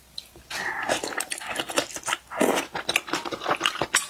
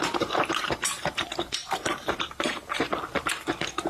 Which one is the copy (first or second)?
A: second